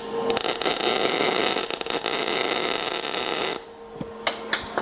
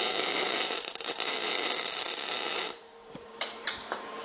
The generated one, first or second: second